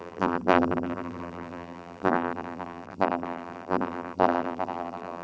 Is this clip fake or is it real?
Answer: fake